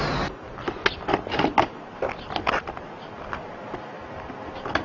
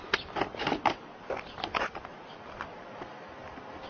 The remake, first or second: second